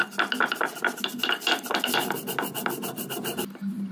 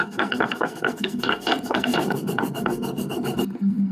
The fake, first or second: second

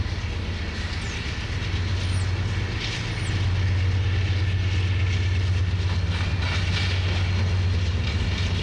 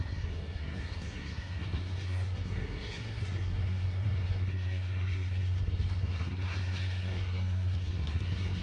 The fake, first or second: second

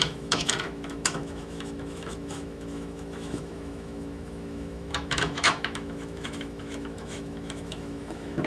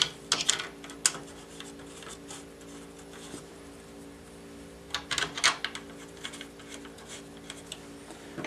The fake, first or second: first